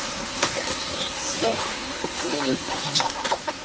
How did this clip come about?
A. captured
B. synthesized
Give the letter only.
B